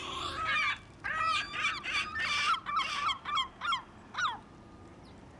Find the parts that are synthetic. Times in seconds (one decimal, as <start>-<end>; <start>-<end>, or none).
0.0-2.1; 2.7-3.7